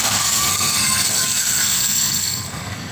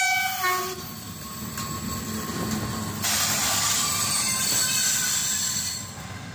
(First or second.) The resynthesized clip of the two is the first